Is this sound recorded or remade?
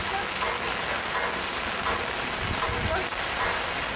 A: recorded